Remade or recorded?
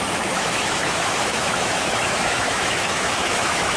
remade